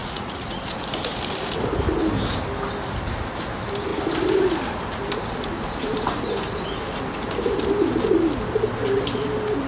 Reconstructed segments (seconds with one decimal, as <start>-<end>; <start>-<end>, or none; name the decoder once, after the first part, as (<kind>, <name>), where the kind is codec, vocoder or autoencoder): 0.0-0.6 (vocoder, Vocos)